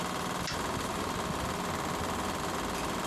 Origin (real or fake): real